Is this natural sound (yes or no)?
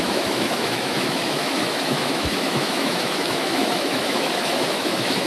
no